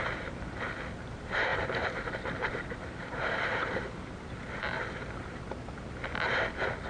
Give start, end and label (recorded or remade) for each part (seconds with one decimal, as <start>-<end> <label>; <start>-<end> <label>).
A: 0.0-1.5 recorded; 1.5-5.4 remade; 5.4-6.9 recorded